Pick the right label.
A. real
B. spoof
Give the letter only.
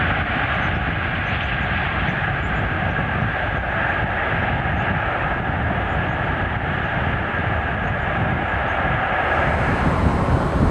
A